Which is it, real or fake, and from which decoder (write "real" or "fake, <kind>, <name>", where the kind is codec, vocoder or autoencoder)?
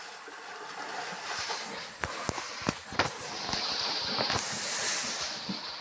real